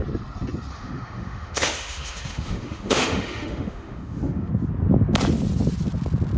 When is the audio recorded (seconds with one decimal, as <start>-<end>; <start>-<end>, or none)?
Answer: 0.0-0.7; 4.5-6.4